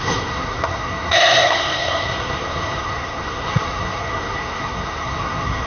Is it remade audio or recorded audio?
remade